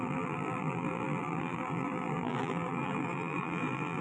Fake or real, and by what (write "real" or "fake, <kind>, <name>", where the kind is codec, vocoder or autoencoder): fake, vocoder, BigVGAN v2